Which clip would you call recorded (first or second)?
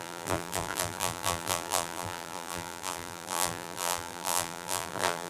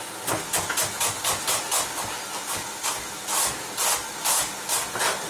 second